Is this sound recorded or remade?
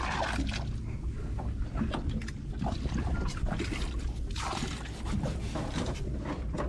recorded